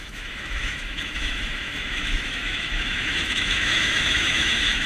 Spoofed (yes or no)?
yes